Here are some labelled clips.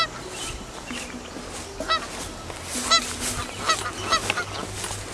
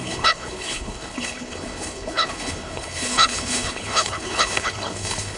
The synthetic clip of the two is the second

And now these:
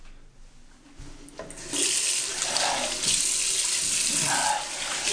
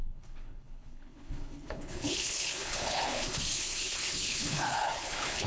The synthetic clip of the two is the second